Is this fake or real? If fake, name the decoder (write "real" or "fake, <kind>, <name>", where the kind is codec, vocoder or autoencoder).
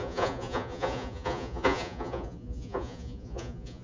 fake, vocoder, Vocos